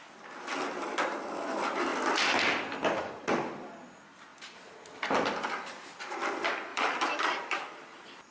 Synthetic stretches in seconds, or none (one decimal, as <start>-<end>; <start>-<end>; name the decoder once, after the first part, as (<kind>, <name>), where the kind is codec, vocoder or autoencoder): 6.7-7.7 (vocoder, BigVGAN v2)